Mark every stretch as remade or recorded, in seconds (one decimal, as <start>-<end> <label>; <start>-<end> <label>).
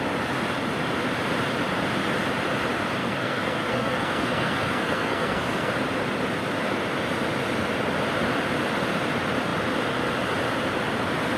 0.0-3.0 recorded; 3.0-5.7 remade; 5.7-11.4 recorded